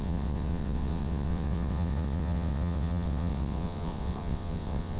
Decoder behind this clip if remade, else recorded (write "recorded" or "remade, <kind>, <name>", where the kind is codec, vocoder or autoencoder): remade, vocoder, WaveNeXt